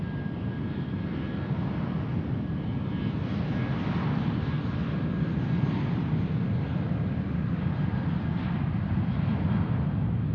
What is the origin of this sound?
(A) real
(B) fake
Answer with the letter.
A